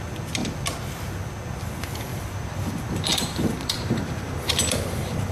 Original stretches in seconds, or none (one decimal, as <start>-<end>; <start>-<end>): 0.0-2.1